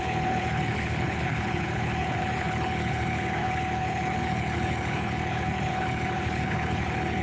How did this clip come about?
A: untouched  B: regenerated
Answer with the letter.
B